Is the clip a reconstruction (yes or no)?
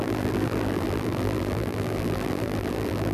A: yes